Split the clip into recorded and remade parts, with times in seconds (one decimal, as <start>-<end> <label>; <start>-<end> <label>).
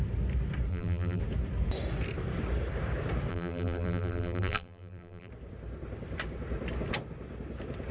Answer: 0.0-0.7 recorded; 0.7-1.2 remade; 1.2-3.3 recorded; 3.3-5.3 remade; 5.3-7.9 recorded